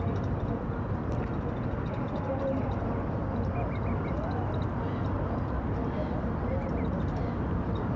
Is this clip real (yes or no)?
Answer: yes